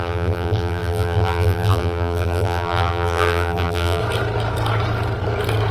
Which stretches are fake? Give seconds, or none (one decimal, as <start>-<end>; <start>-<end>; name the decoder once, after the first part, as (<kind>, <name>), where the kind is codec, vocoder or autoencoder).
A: 0.0-4.0 (vocoder, BigVGAN v2)